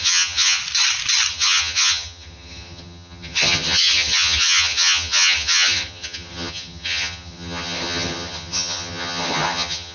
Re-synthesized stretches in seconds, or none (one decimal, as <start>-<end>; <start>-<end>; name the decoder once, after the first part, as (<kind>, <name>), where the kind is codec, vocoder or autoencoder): 0.0-0.6 (vocoder, HiFi-GAN); 1.3-9.9